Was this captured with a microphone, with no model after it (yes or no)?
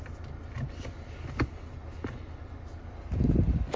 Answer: yes